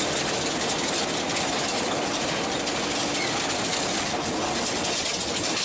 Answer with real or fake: real